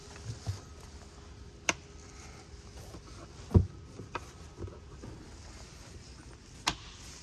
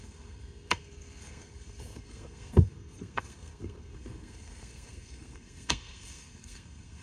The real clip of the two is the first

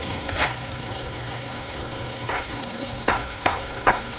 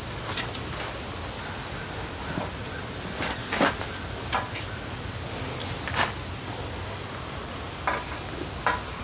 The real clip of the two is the second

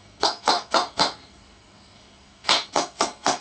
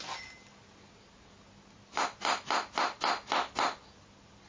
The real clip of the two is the second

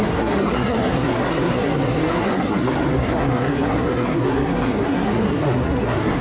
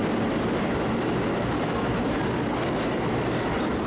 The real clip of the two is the second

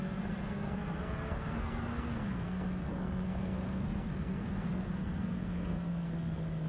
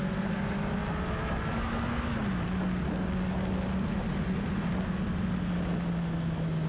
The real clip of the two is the second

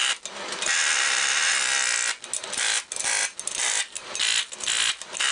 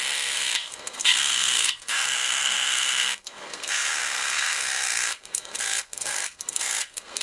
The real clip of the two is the first